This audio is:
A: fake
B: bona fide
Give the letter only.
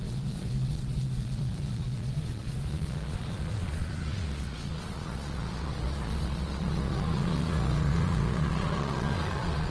A